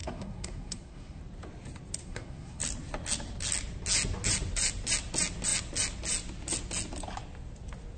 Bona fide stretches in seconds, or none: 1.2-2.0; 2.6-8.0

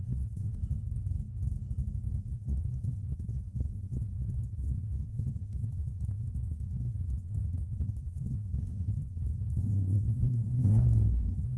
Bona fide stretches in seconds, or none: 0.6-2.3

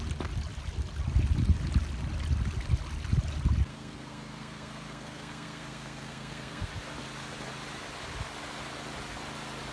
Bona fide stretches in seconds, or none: 0.0-3.7; 6.7-9.7

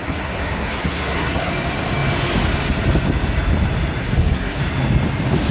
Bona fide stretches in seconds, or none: 1.5-4.0; 4.6-5.5

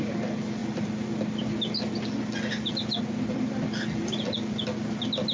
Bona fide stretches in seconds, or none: 0.0-5.3

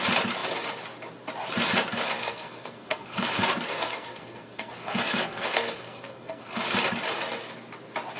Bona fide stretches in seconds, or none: 0.0-2.2; 6.6-8.2